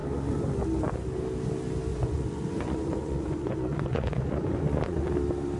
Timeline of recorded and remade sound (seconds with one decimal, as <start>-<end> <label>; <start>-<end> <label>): 0.0-1.9 recorded; 1.9-5.1 remade; 5.1-5.6 recorded